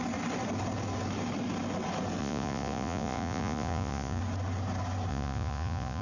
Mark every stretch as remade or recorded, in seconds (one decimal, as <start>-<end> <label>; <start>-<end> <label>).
0.0-2.2 recorded; 2.2-4.2 remade; 4.2-5.1 recorded; 5.1-6.0 remade